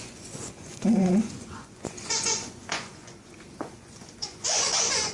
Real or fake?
fake